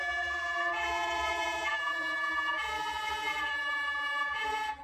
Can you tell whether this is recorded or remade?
remade